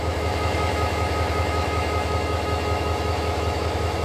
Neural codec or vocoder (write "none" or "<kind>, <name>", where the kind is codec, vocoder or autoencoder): autoencoder, DAC-VAE